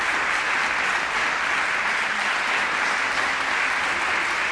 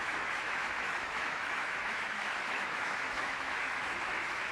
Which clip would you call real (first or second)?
first